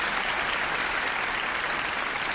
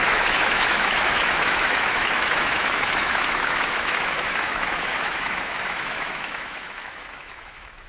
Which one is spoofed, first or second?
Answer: second